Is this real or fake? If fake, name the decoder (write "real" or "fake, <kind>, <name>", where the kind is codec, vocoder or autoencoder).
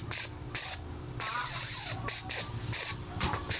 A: real